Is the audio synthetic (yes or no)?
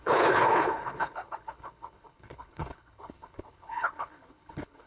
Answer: yes